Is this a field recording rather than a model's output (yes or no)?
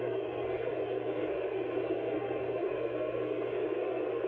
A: no